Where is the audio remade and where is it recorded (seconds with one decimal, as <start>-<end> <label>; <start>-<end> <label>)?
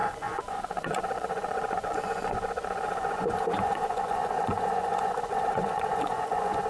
0.0-6.7 remade